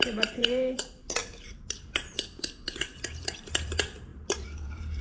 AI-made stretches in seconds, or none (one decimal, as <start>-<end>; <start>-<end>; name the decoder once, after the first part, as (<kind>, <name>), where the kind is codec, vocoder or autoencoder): 0.0-5.0 (vocoder, BigVGAN v2)